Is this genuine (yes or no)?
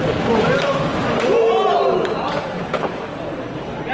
no